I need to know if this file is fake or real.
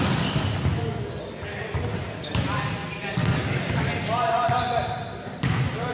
real